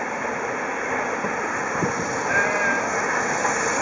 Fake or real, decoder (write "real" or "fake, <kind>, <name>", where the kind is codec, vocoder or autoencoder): real